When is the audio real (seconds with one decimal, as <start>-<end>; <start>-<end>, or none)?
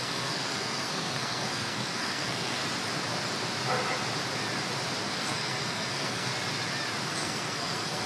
2.6-5.0; 6.3-7.1